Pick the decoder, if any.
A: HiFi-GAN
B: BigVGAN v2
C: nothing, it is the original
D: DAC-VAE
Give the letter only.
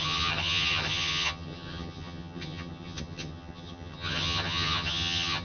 A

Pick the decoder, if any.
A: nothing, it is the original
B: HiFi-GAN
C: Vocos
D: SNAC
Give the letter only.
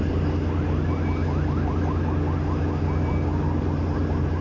A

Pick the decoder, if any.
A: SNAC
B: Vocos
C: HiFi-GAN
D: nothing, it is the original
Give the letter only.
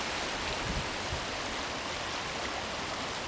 D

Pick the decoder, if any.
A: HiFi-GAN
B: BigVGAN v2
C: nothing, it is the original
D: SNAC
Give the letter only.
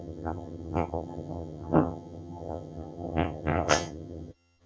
A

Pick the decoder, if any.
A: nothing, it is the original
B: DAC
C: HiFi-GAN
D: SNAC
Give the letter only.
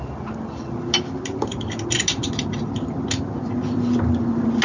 A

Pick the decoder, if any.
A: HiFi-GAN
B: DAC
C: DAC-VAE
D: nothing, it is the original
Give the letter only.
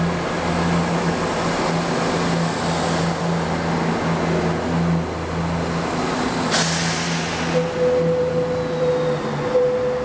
D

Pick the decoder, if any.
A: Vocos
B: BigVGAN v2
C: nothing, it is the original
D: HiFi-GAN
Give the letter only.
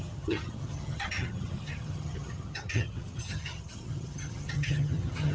D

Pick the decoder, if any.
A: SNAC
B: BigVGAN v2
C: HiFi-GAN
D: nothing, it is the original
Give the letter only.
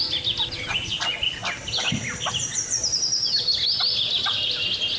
D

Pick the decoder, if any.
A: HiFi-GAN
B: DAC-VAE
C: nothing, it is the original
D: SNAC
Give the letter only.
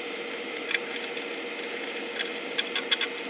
C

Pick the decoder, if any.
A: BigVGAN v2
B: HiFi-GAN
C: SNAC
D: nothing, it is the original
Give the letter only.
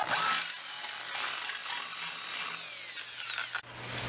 D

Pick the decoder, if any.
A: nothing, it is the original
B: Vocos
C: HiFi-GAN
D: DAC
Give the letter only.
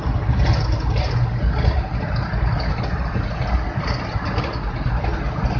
A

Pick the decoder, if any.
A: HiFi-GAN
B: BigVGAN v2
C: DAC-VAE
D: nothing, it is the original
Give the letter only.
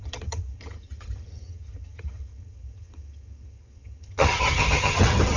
A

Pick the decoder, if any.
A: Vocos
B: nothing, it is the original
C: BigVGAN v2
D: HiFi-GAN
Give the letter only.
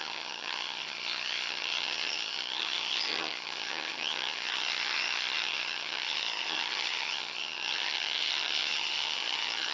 D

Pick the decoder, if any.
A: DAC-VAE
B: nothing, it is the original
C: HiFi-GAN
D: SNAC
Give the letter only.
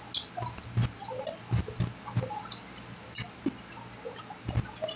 B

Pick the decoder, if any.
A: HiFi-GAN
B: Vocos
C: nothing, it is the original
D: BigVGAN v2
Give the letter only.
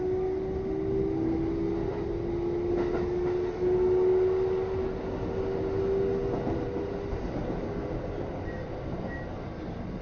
C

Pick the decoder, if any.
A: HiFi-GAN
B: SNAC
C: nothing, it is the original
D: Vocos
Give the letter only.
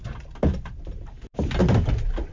C